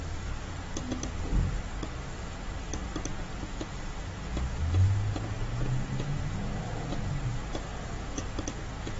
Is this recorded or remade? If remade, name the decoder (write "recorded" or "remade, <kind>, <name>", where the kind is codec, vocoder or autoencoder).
recorded